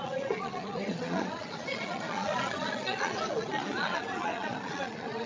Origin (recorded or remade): remade